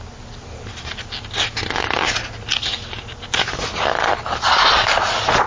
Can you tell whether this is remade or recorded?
recorded